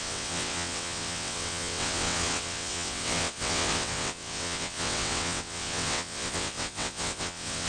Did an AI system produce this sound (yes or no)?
yes